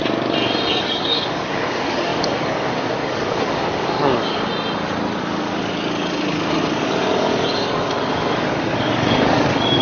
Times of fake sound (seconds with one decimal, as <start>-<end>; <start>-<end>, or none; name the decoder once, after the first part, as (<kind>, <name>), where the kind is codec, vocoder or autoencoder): 0.7-4.5 (codec, DAC); 5.2-9.8